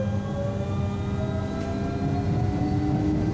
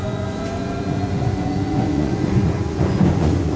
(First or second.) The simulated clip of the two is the second